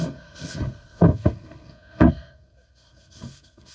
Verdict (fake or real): fake